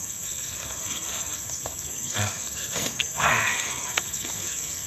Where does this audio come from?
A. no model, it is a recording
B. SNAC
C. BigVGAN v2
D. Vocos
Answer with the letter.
B